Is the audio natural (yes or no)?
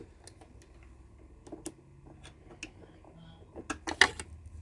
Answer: yes